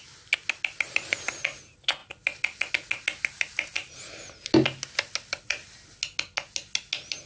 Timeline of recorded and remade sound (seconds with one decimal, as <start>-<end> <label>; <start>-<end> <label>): 0.0-7.3 recorded